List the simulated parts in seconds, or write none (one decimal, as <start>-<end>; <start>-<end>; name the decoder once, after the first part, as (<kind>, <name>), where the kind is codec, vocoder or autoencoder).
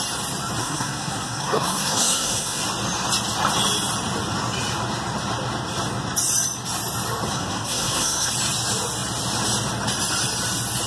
0.6-2.6 (codec, SNAC); 7.3-8.3